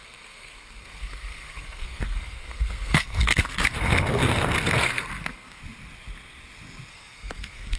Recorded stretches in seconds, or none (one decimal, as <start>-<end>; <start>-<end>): 5.6-6.9